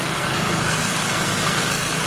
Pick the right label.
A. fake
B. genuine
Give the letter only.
A